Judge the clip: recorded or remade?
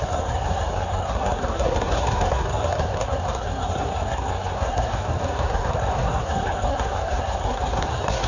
remade